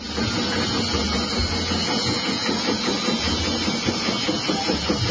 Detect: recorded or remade recorded